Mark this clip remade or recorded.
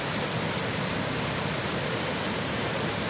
recorded